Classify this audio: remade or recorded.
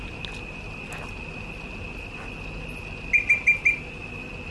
recorded